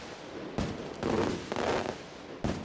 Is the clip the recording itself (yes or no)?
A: yes